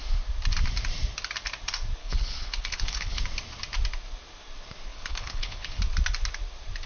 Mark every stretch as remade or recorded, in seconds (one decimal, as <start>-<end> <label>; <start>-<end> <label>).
0.0-2.0 recorded; 2.0-3.2 remade; 3.2-4.9 recorded; 4.9-5.8 remade; 5.8-6.9 recorded